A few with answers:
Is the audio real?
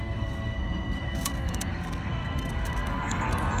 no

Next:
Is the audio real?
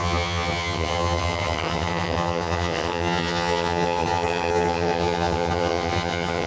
no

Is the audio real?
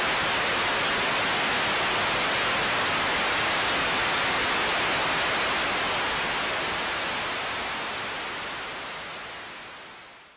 yes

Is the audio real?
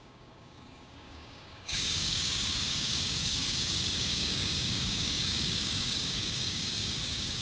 no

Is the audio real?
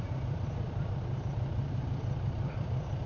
no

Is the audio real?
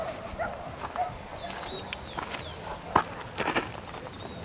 yes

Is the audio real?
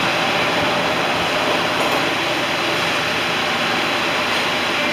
yes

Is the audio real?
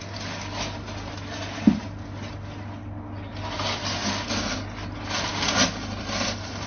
yes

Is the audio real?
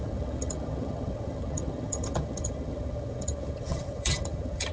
no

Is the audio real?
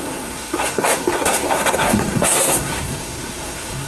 no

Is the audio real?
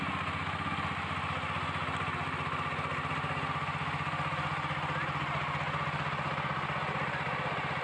yes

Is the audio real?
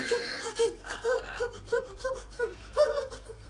no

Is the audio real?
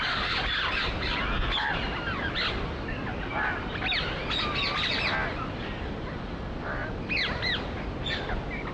yes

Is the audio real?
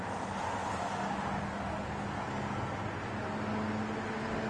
yes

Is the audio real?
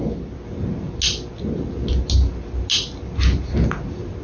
yes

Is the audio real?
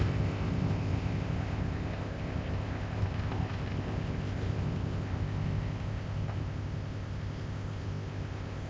no